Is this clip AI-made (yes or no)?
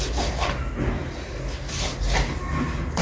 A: no